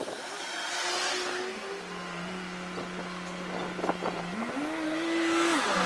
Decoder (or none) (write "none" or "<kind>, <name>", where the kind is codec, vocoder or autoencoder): none